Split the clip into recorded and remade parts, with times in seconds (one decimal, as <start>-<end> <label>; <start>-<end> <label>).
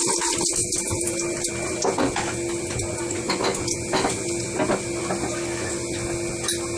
0.0-0.6 recorded; 0.6-1.5 remade; 1.5-6.8 recorded